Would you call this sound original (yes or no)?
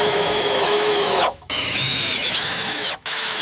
no